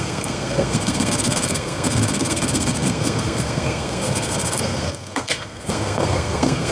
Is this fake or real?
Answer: fake